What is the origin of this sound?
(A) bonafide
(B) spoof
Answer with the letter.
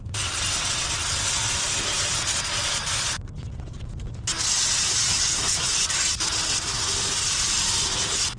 A